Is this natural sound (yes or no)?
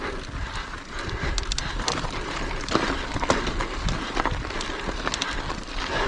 yes